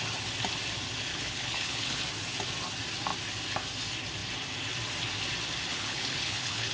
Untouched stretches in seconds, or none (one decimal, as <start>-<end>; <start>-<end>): 0.0-1.1; 2.0-5.7